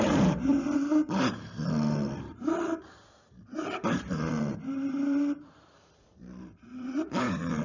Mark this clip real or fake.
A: fake